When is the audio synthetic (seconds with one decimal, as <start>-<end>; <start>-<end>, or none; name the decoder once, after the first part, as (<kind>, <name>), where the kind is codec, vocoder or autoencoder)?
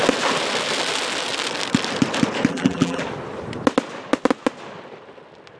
2.5-3.0 (vocoder, BigVGAN v2)